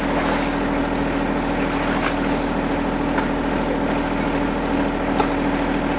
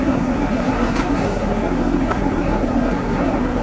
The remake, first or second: second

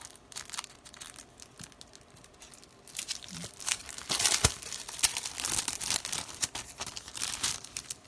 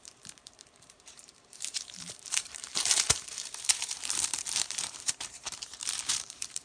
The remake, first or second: second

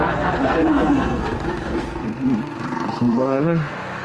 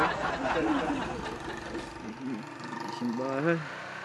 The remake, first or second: first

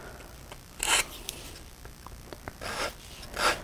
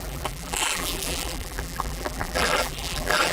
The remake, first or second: second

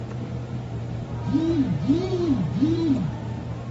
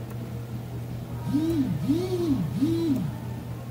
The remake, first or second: first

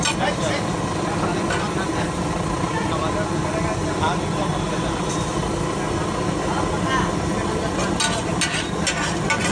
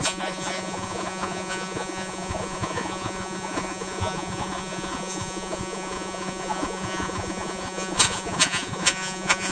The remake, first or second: second